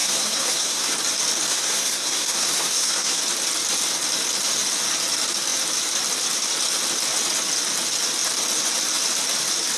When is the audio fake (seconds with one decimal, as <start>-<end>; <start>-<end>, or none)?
0.0-0.9; 1.5-3.2